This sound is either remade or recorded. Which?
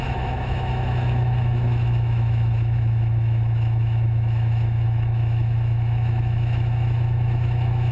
remade